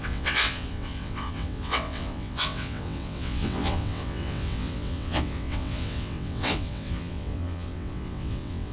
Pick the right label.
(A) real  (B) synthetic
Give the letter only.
B